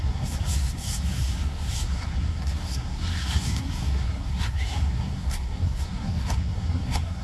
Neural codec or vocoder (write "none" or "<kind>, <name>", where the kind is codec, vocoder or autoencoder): codec, SNAC